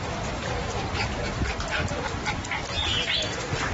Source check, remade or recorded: recorded